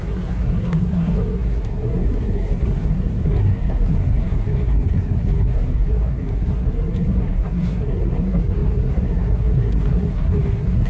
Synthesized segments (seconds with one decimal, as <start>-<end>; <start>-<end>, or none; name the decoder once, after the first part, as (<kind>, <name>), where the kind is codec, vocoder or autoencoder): 0.0-10.9 (codec, SNAC)